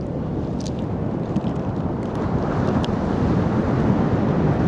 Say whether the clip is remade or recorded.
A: remade